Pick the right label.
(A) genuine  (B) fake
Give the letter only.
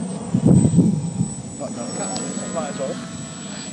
A